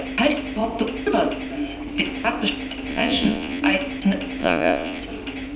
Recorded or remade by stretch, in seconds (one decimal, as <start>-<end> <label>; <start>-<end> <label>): 0.0-2.9 recorded; 2.9-3.6 remade; 3.6-4.4 recorded; 4.4-5.0 remade; 5.0-5.6 recorded